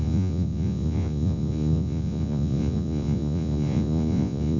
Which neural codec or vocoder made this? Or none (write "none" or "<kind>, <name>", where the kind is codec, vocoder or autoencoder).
vocoder, Vocos